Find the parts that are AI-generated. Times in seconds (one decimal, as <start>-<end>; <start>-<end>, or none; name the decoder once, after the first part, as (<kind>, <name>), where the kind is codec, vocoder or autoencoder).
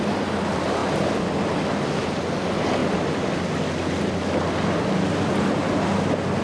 none